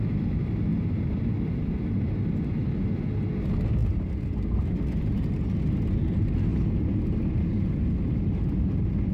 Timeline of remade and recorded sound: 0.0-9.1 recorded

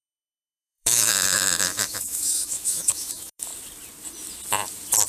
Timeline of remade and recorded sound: 0.0-3.5 remade; 3.5-5.1 recorded

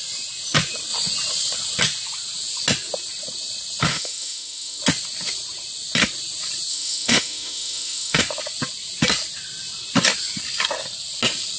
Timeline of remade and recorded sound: 0.0-3.9 recorded; 3.9-4.8 remade; 4.8-6.7 recorded; 6.7-8.2 remade; 8.2-11.6 recorded

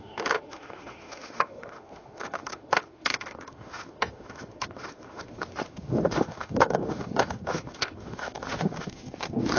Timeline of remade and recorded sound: 0.0-9.6 remade

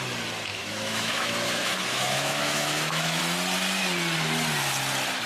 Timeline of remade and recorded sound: 0.0-0.5 recorded; 0.5-3.2 remade; 3.2-5.3 recorded

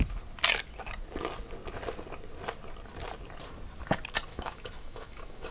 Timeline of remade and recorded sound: 0.0-4.3 recorded; 4.3-5.5 remade

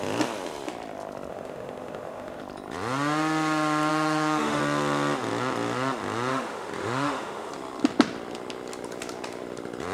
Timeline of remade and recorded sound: 0.0-1.3 recorded; 1.3-2.4 remade; 2.4-3.9 recorded; 3.9-4.6 remade; 4.6-6.3 recorded; 6.3-7.5 remade; 7.5-9.9 recorded